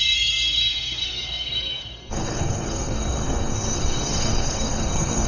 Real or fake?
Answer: fake